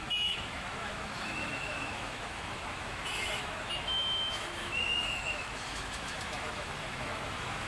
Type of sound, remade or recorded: remade